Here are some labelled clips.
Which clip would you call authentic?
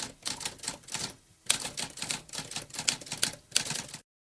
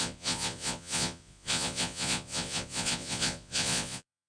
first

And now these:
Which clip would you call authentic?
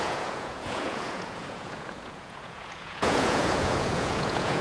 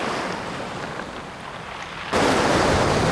second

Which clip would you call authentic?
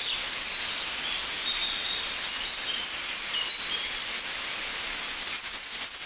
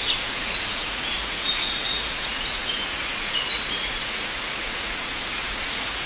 first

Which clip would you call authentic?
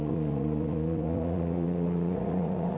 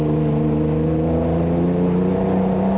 second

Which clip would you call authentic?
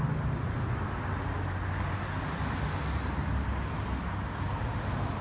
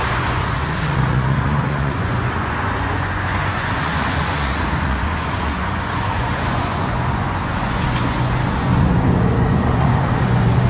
first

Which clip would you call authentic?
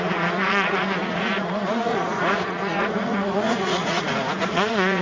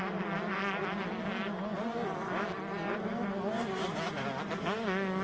second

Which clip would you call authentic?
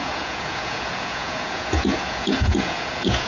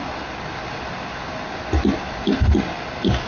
second